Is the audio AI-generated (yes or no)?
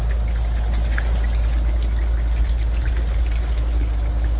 no